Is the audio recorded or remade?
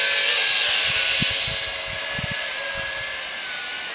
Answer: recorded